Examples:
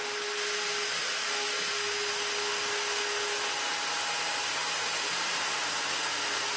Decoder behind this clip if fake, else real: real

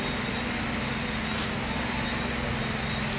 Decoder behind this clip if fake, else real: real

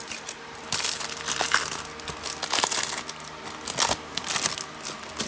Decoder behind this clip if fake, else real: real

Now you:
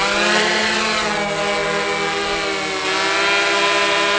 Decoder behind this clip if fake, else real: real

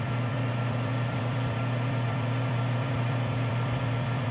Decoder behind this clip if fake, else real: fake, vocoder, BigVGAN v2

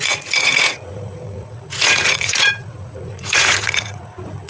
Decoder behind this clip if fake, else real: fake, vocoder, Vocos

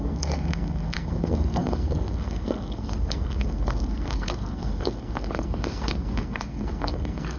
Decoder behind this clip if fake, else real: fake, codec, SNAC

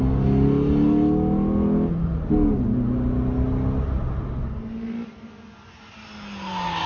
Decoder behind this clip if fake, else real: real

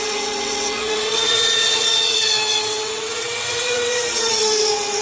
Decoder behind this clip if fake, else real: fake, vocoder, WaveNeXt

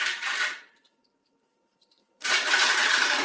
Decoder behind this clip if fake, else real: fake, vocoder, BigVGAN v2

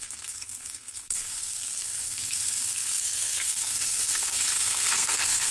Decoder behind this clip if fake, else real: fake, codec, SNAC